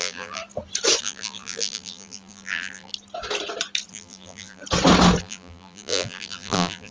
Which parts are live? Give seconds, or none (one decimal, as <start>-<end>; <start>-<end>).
0.4-1.0; 2.9-3.9; 4.6-5.2